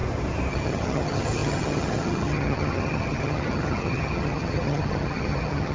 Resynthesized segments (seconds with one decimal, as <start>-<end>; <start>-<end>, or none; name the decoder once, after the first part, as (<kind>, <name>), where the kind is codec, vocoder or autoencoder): 0.5-5.7 (vocoder, HiFi-GAN)